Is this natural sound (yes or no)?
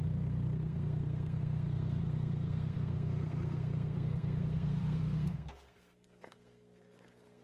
no